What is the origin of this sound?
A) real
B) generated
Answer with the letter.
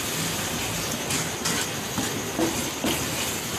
A